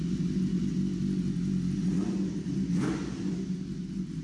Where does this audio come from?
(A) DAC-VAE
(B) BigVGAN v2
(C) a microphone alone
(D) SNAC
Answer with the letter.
C